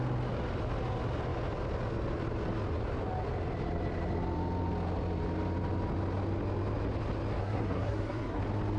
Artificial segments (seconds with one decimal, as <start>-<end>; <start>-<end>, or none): 7.4-8.4